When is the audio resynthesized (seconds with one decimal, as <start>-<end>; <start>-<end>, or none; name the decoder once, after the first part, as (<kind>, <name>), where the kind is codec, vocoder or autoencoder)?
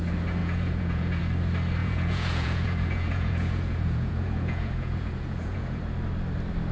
0.4-1.2 (vocoder, Vocos); 1.8-5.8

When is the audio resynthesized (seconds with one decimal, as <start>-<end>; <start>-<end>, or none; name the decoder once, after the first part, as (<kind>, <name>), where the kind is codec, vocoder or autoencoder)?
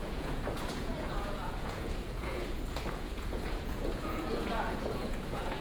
0.0-5.6 (vocoder, Vocos)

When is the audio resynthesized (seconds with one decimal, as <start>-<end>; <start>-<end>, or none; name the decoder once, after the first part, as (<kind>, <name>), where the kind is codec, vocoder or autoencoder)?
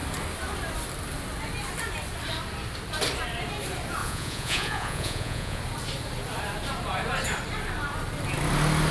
4.0-5.6 (vocoder, Vocos)